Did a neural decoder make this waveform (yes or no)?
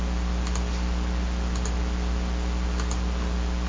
no